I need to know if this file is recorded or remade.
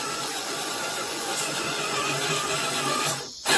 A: remade